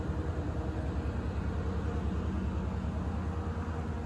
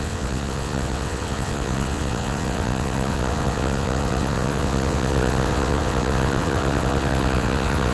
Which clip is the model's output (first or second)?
second